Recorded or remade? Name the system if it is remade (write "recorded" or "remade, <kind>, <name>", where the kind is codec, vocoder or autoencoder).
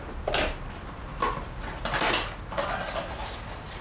recorded